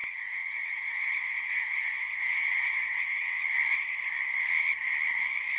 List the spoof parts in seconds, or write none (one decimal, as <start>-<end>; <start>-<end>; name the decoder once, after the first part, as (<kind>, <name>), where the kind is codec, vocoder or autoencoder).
0.0-3.4 (vocoder, WaveNeXt)